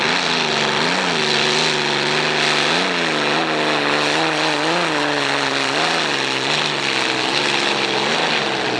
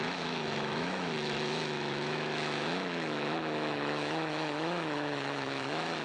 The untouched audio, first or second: first